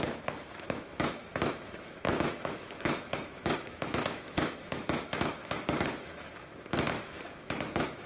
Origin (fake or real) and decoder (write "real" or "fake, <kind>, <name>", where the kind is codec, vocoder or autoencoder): fake, autoencoder, DAC-VAE